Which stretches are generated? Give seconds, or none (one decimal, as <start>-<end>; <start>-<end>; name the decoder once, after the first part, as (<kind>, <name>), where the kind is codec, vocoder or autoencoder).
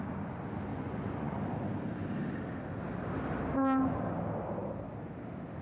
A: 0.7-1.4 (vocoder, Vocos)